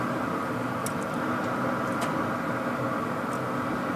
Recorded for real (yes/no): yes